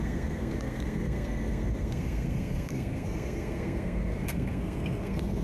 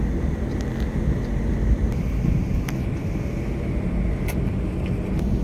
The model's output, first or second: first